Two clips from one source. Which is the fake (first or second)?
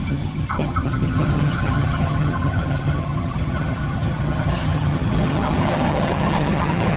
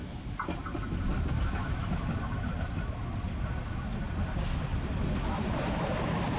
first